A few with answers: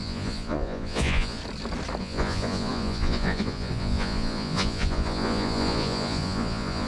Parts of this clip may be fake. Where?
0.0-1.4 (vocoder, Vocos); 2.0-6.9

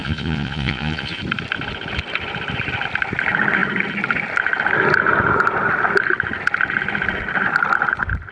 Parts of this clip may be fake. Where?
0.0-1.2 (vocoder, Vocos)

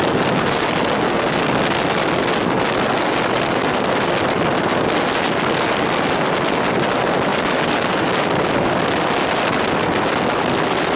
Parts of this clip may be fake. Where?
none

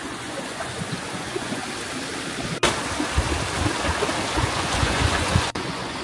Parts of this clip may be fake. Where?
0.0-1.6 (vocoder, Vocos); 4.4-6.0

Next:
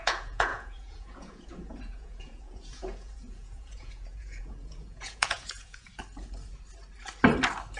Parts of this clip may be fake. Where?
0.0-5.9 (vocoder, Vocos)

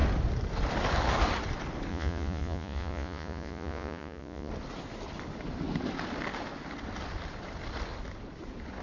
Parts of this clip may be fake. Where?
1.9-4.5 (vocoder, Vocos)